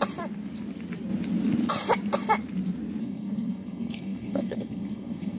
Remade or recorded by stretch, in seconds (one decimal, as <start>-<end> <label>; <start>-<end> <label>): 0.0-3.0 recorded; 3.0-5.4 remade